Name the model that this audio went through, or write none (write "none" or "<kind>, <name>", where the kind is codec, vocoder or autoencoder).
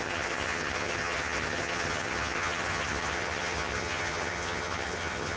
vocoder, HiFi-GAN